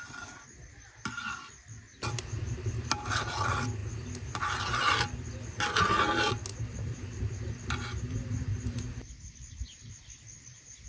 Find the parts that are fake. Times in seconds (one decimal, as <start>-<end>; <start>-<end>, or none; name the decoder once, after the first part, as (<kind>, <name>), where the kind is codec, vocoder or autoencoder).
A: none